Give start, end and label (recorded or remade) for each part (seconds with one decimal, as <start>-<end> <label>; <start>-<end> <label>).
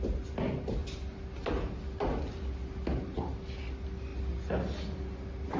0.0-5.6 recorded